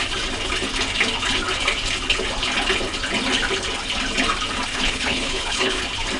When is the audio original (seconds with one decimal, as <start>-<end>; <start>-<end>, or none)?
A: 0.0-4.7; 5.8-6.2